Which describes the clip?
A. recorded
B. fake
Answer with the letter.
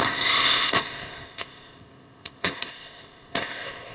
B